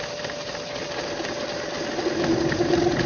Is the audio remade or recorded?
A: recorded